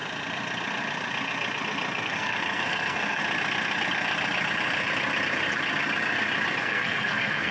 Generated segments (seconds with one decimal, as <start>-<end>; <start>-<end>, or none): 2.0-3.2; 6.6-7.5